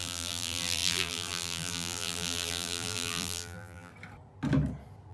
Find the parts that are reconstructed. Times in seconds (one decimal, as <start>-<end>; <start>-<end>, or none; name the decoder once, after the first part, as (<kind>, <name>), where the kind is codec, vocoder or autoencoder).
0.0-3.9 (vocoder, BigVGAN v2)